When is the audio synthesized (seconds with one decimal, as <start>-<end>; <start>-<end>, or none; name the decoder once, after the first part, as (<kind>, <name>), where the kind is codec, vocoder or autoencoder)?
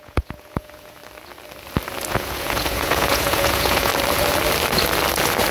0.0-1.0 (vocoder, Vocos); 2.1-3.9